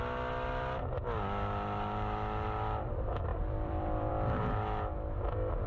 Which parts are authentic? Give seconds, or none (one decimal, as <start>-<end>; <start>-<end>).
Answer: 0.0-3.3; 4.1-5.7